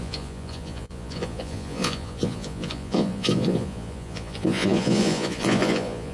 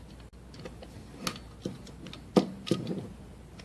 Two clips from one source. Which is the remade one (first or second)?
first